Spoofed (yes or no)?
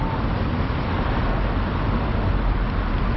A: no